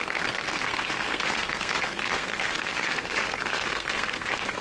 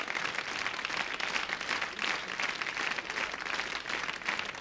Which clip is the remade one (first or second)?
first